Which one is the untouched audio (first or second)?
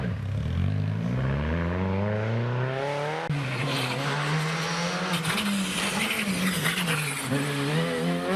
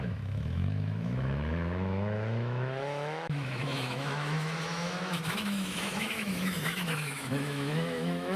first